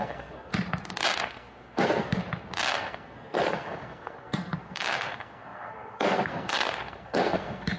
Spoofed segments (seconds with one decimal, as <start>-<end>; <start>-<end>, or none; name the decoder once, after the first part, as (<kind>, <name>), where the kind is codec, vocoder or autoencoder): 0.0-0.5 (codec, SNAC); 1.2-2.2; 2.7-7.8